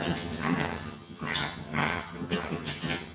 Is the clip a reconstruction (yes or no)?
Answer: yes